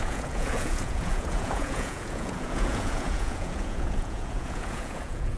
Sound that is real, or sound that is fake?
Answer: fake